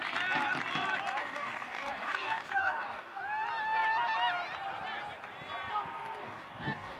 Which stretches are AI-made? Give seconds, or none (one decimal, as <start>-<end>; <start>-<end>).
1.2-3.2; 6.2-7.0